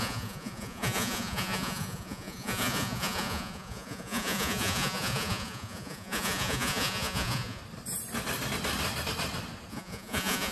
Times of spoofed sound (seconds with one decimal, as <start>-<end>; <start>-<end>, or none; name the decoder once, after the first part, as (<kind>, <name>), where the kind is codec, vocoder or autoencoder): 0.0-7.6 (vocoder, Vocos); 9.7-10.5